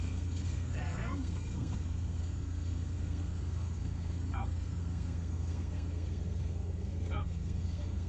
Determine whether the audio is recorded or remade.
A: remade